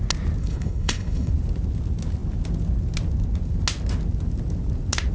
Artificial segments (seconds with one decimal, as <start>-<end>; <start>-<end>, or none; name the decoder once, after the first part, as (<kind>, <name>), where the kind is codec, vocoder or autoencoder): 0.4-1.3 (codec, HILCodec)